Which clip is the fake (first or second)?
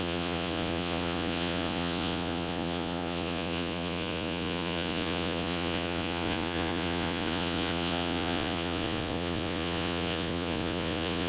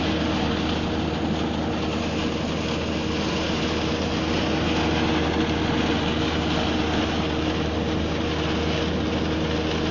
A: first